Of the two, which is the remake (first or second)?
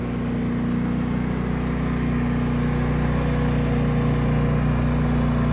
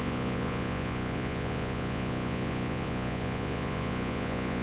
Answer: second